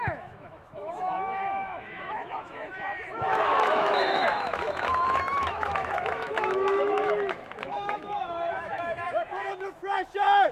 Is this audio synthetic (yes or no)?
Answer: yes